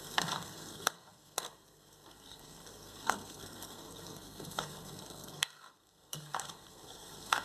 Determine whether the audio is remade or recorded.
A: remade